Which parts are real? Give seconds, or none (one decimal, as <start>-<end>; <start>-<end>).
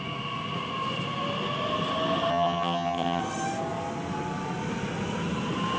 0.0-2.3; 3.2-5.8